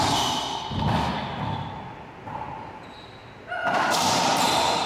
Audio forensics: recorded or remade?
recorded